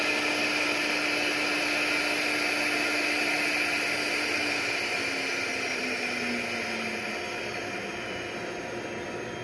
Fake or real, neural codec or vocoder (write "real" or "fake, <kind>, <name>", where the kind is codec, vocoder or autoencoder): real